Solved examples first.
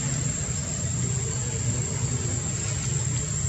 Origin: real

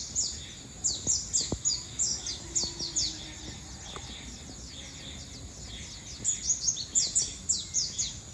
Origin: real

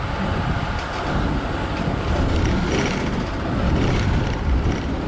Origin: real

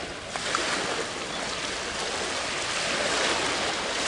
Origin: real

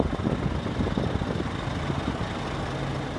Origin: real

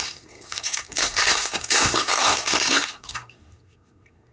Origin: fake